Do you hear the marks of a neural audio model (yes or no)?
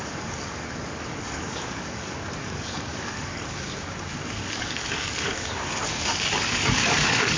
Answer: yes